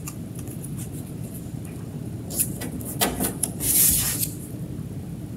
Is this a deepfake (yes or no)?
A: no